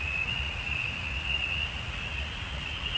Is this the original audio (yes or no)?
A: no